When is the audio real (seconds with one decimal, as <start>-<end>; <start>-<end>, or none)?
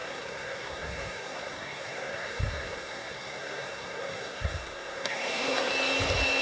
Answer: 5.7-6.4